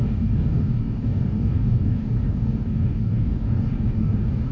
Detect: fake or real fake